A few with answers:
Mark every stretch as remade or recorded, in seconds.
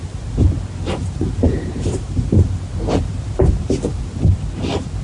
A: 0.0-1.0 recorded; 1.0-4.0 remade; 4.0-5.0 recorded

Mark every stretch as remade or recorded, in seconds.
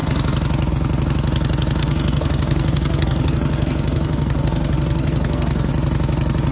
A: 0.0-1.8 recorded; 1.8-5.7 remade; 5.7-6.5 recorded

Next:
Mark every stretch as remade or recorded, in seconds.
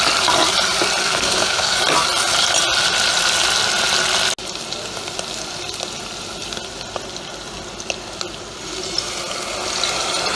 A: 0.0-1.0 recorded; 1.0-1.8 remade; 1.8-10.3 recorded